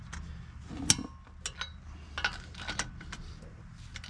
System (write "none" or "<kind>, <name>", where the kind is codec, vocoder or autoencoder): none